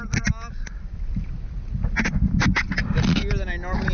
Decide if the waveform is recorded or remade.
recorded